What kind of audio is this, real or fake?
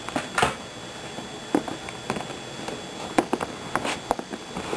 real